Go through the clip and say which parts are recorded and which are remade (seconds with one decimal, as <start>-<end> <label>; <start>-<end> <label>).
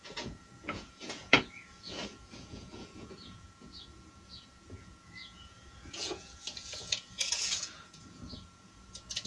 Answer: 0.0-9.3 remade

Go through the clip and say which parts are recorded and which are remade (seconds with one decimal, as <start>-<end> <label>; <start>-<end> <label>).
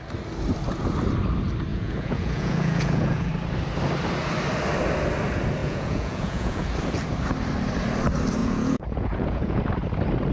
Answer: 0.0-1.7 recorded; 1.7-3.3 remade; 3.3-5.6 recorded; 5.6-6.7 remade; 6.7-8.4 recorded; 8.4-9.6 remade; 9.6-10.3 recorded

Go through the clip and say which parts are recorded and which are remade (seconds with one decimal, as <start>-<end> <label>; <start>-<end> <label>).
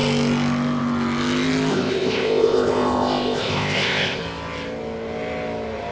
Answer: 0.0-1.7 recorded; 1.7-4.2 remade; 4.2-5.9 recorded